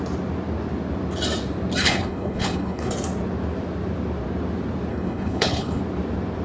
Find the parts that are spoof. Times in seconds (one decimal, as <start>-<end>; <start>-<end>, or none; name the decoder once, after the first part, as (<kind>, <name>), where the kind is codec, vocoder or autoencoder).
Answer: 1.8-2.9 (codec, HILCodec); 4.9-5.8